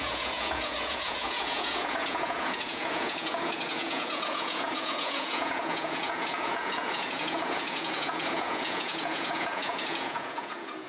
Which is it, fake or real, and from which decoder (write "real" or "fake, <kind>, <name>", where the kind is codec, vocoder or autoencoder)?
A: fake, vocoder, Vocos